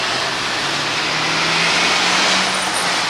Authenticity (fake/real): real